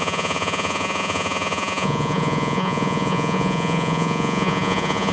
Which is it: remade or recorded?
remade